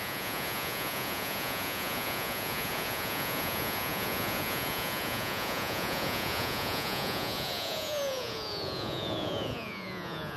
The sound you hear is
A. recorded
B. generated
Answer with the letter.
B